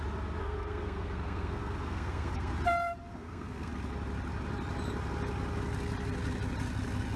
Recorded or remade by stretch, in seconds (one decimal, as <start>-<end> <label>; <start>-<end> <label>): 0.0-0.4 recorded; 0.4-2.5 remade; 2.5-3.1 recorded; 3.1-3.7 remade; 3.7-7.2 recorded